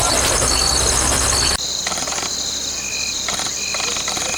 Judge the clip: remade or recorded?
recorded